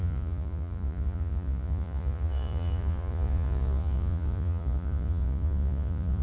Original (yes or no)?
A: no